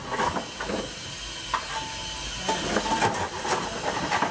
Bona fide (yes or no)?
yes